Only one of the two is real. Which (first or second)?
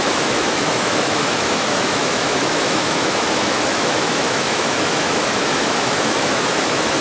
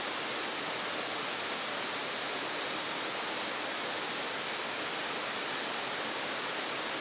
second